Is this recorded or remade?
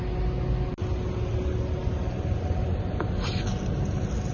recorded